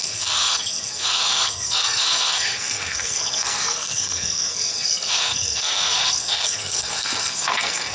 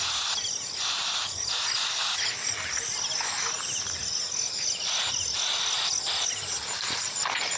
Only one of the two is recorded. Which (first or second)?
second